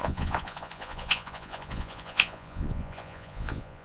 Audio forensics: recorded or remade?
remade